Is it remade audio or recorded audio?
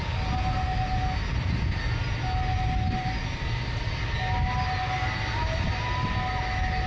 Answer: recorded